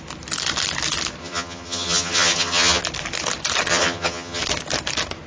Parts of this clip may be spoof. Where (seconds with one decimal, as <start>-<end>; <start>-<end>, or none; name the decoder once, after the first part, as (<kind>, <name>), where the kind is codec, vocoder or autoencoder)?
1.2-2.8 (vocoder, HiFi-GAN); 3.7-4.4